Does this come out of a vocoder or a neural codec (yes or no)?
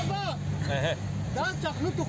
no